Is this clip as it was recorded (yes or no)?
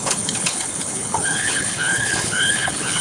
no